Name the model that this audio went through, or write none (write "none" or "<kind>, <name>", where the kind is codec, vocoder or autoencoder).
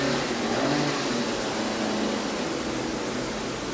none